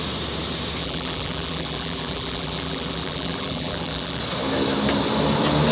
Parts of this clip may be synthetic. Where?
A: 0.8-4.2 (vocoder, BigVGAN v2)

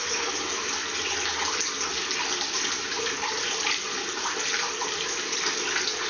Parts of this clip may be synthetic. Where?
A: 1.9-5.6 (vocoder, BigVGAN v2)

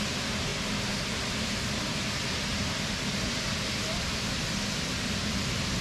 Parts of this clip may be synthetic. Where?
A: 2.5-4.3 (vocoder, BigVGAN v2)